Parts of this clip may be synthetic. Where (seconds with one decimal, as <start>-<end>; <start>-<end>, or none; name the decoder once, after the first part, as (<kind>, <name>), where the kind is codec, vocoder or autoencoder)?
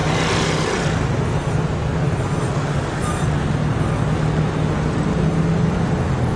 none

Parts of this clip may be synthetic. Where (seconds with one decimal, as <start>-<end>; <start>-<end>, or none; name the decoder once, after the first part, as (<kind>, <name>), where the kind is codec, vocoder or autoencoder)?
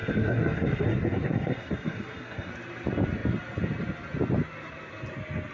0.0-2.5 (codec, SNAC)